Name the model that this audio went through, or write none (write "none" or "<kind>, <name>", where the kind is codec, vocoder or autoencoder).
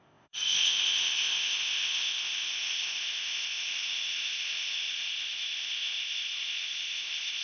codec, ZipCodec